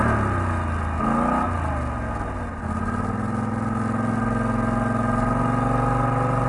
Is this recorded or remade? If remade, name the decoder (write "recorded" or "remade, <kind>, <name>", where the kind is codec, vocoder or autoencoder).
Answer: recorded